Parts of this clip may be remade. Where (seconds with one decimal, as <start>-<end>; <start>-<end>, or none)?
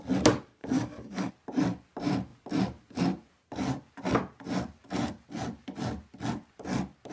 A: 0.6-1.3